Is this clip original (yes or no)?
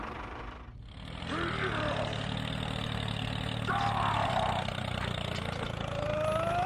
yes